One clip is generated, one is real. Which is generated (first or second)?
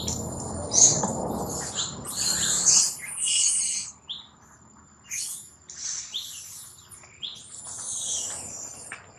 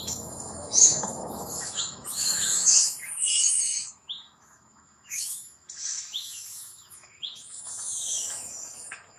second